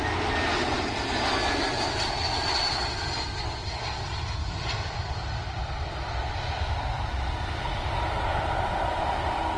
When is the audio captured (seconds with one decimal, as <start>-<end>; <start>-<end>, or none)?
0.0-9.6

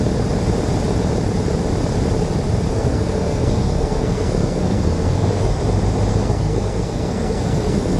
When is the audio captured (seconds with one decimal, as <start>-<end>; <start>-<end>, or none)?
0.0-2.7; 5.6-6.1